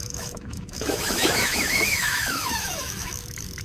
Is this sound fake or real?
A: fake